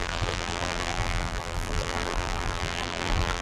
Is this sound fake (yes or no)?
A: yes